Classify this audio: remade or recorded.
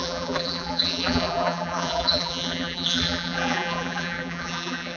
remade